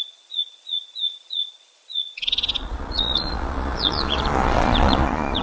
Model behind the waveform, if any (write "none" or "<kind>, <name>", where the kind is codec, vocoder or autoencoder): vocoder, Vocos